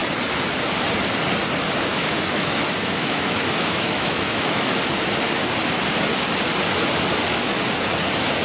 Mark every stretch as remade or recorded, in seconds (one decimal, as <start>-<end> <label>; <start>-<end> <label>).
0.0-1.9 recorded; 1.9-4.7 remade; 4.7-8.4 recorded